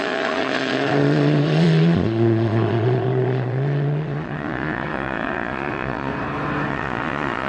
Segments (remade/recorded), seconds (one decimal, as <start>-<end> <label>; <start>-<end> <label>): 0.0-6.1 remade; 6.1-6.7 recorded; 6.7-7.5 remade